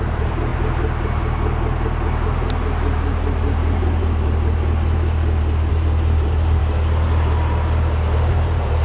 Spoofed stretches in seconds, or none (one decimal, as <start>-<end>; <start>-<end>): 0.0-0.5; 5.7-6.6; 8.3-8.8